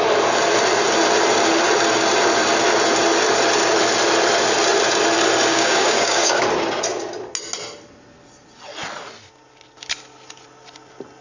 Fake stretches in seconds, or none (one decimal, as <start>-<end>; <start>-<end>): 5.5-6.4

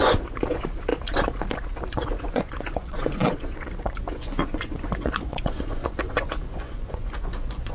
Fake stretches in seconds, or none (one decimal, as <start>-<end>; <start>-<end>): 0.0-0.9; 2.3-7.7

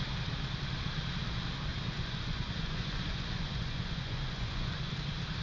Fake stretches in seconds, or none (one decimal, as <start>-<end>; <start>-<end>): 1.7-4.9

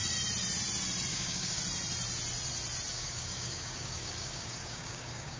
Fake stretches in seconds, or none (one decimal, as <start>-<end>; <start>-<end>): 1.1-1.6; 2.9-5.4